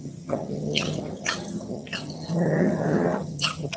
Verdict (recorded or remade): remade